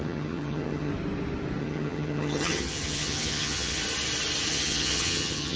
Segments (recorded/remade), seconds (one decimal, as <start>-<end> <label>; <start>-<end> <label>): 0.0-0.9 remade; 0.9-1.6 recorded; 1.6-3.8 remade; 3.8-4.5 recorded; 4.5-5.6 remade